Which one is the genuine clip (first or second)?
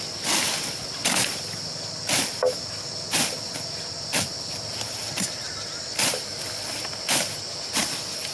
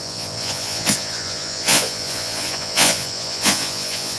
first